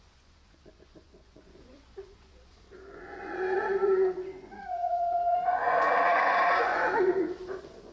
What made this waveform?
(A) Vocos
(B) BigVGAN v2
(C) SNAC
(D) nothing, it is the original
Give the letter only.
A